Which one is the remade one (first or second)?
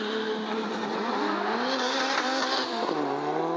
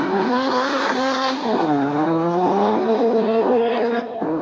second